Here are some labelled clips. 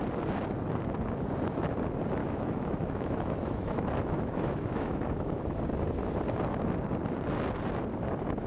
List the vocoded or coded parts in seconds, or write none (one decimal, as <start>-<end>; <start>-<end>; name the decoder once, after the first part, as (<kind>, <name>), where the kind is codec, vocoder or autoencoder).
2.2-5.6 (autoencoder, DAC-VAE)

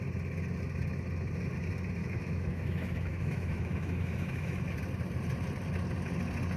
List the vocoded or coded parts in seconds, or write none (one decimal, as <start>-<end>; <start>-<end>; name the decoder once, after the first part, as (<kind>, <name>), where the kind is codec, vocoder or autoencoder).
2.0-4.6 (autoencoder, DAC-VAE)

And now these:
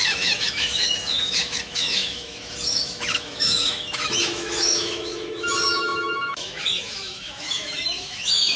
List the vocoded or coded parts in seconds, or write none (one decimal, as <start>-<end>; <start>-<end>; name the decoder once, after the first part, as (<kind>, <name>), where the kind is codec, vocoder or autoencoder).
0.0-8.6 (autoencoder, DAC-VAE)

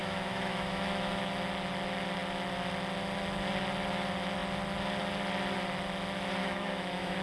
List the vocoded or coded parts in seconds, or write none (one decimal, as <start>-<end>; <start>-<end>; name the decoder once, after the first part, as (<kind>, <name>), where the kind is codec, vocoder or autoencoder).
0.0-1.3 (autoencoder, DAC-VAE); 6.4-7.2

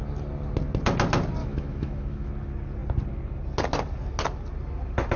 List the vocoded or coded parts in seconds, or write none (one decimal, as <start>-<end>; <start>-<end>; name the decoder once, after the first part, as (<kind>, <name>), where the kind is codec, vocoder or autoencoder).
1.4-2.3 (autoencoder, DAC-VAE)

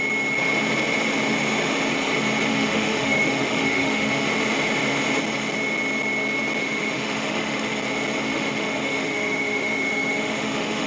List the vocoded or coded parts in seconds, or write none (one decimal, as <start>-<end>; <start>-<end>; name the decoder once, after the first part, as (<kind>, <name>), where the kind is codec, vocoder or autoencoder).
2.5-4.3 (autoencoder, DAC-VAE); 6.6-7.7; 8.3-10.9